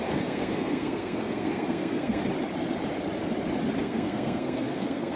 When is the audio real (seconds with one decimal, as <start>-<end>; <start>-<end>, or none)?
2.2-3.8